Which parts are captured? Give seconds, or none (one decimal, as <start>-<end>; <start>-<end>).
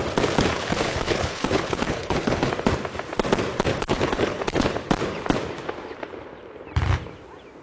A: 0.0-0.5; 2.5-3.7; 4.8-7.6